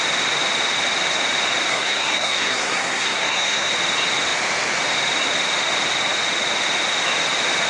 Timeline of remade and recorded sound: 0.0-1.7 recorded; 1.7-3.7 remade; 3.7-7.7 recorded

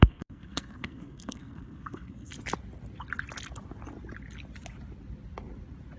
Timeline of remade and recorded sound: 0.0-2.3 remade; 2.3-6.0 recorded

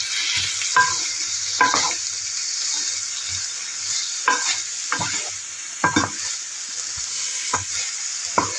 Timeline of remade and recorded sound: 0.0-7.1 recorded; 7.1-7.7 remade; 7.7-8.6 recorded

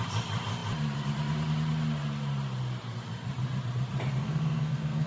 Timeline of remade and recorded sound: 0.0-4.2 recorded; 4.2-5.1 remade

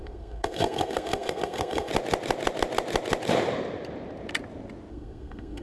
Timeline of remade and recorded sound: 0.0-1.9 remade; 1.9-4.9 recorded; 4.9-5.6 remade